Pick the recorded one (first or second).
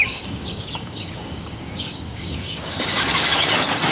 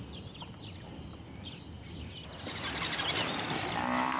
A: second